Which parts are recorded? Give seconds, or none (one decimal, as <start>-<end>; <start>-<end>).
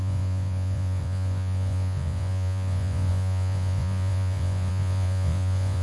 none